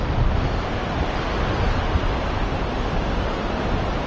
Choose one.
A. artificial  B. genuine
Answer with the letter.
B